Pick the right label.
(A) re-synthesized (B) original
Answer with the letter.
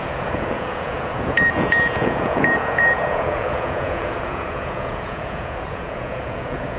A